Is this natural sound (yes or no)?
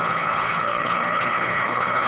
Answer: no